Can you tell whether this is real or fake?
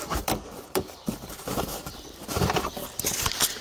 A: fake